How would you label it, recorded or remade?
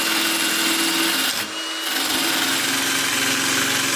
recorded